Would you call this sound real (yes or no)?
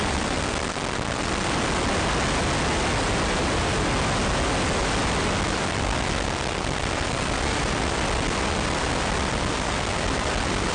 yes